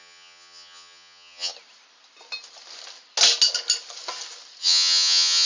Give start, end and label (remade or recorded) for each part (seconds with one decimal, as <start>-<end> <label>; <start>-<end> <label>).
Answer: 0.0-1.5 remade; 1.5-4.6 recorded; 4.6-5.4 remade